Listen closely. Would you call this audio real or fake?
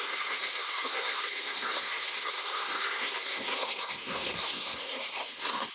fake